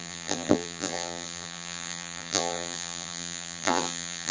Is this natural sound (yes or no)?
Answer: no